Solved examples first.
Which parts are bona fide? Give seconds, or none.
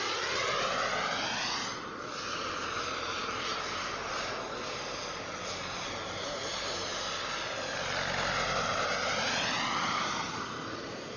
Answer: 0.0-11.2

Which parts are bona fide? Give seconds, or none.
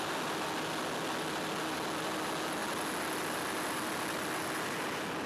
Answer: 0.0-5.3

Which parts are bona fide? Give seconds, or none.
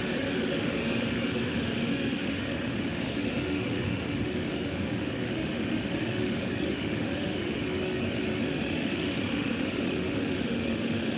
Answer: none